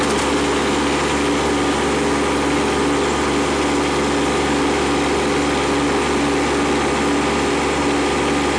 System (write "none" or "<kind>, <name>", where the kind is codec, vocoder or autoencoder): none